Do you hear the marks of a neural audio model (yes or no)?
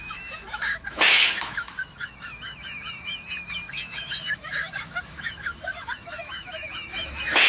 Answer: yes